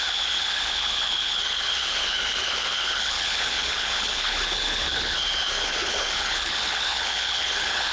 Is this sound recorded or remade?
remade